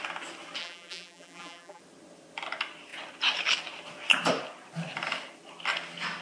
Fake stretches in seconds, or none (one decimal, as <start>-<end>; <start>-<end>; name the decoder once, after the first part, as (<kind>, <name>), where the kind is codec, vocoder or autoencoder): 0.6-1.8 (vocoder, BigVGAN v2)